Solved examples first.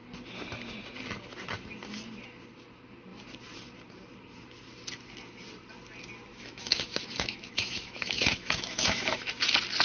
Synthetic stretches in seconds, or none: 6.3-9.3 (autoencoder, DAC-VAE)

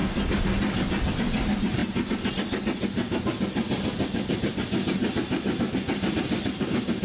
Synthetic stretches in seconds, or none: none

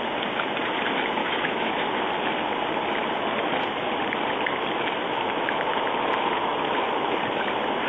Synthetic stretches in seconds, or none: 1.2-1.7 (autoencoder, DAC-VAE)

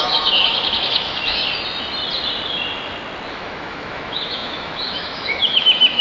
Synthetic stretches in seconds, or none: 0.0-1.4 (autoencoder, DAC-VAE); 3.3-6.0